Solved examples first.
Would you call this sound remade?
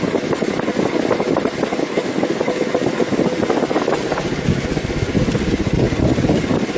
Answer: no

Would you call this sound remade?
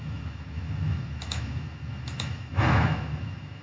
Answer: yes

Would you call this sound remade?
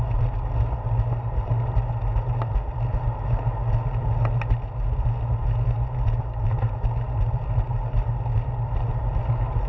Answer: no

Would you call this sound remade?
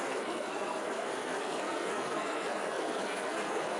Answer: yes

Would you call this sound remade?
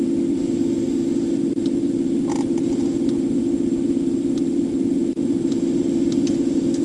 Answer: no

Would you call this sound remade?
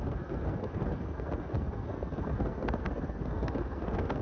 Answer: yes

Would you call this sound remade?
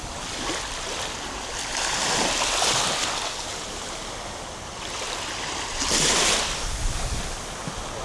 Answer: no